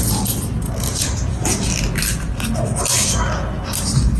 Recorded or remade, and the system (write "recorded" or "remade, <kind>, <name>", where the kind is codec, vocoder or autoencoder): recorded